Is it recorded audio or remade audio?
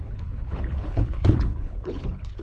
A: remade